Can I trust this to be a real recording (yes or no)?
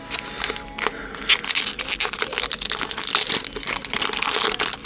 yes